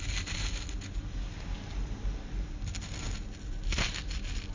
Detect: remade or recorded recorded